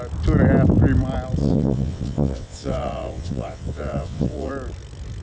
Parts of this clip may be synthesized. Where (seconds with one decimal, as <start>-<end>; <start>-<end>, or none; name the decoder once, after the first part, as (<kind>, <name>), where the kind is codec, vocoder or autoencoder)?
1.4-4.5 (vocoder, WaveNeXt)